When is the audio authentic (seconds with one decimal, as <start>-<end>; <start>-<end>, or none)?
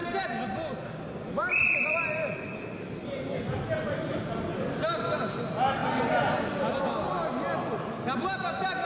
0.0-8.8